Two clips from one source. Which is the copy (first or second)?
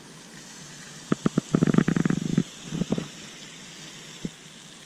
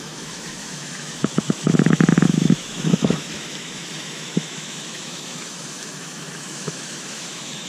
second